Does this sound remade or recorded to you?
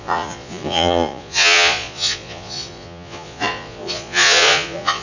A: remade